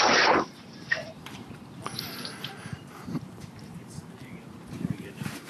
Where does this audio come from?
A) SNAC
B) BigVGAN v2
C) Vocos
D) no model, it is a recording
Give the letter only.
B